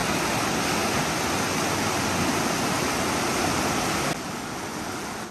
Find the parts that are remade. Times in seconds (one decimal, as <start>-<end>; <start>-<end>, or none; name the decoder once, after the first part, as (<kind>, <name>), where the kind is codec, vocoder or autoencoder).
none